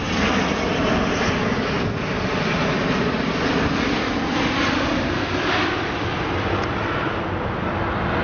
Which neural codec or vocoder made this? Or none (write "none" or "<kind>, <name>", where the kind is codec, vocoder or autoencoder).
none